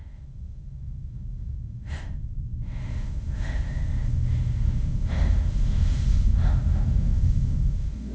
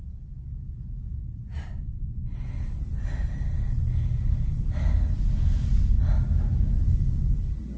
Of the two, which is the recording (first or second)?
second